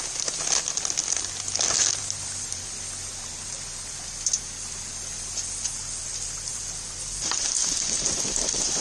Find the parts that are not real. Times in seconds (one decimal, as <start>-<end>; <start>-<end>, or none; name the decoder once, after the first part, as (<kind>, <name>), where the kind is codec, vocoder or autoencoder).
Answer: none